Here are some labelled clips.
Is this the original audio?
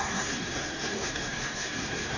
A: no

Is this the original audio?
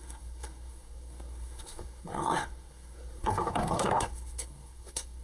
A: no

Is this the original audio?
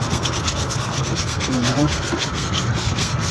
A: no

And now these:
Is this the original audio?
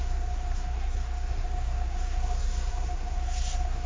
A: no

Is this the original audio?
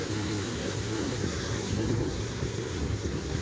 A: no